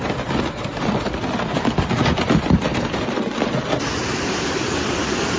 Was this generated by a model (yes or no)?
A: no